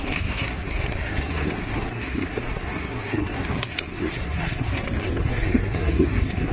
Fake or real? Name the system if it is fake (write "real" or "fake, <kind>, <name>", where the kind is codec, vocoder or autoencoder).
fake, codec, SNAC